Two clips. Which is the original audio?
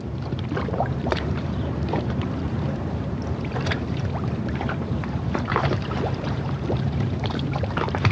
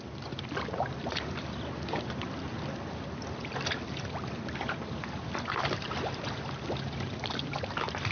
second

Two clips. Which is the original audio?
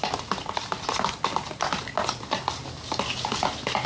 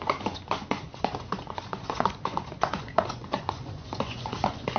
first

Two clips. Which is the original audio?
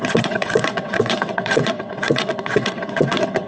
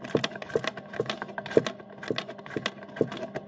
second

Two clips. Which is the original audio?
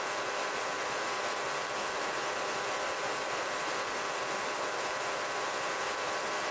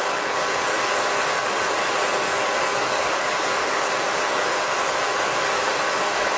first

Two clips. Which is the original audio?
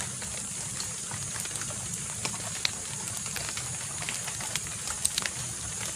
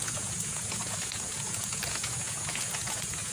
first